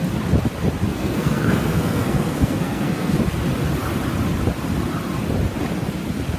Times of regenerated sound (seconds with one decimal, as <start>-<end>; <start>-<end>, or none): 0.9-3.2